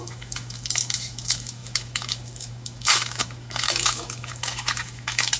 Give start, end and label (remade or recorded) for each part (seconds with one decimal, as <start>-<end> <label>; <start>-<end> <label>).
0.0-5.4 remade